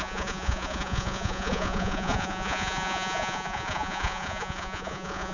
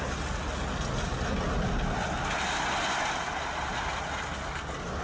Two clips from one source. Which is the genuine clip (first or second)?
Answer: second